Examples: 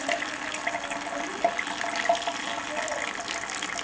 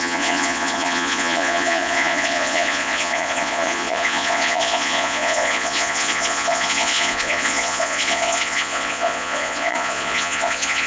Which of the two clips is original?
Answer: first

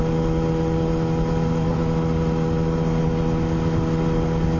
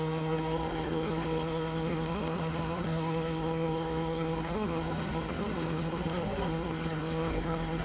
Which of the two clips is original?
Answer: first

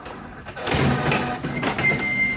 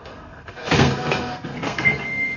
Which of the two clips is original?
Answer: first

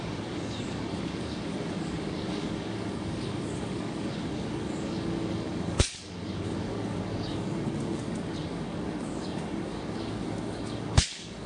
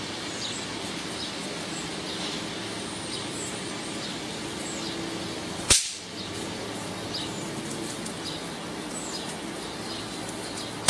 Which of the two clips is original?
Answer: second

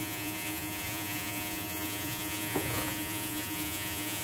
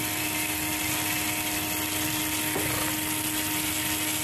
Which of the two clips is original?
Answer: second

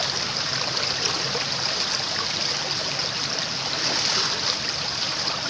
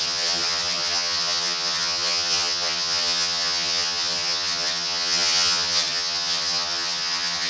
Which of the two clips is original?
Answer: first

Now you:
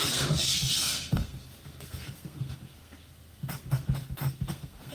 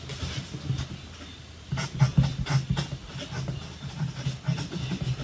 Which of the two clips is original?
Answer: second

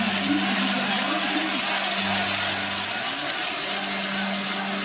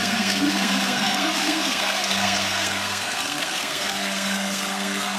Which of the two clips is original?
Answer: first